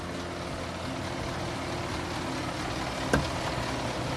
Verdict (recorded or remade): recorded